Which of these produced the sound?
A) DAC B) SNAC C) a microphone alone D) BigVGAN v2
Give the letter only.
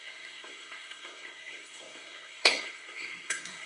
B